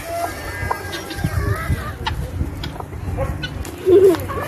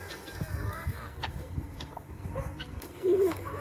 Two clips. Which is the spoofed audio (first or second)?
second